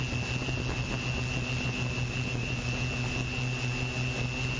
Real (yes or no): yes